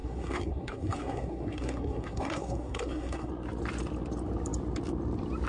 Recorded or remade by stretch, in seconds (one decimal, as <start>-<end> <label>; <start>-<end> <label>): 0.0-3.3 remade; 3.3-5.5 recorded